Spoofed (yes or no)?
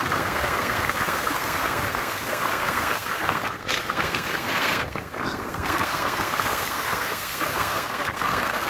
yes